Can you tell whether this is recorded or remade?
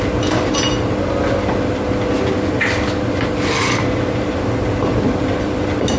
recorded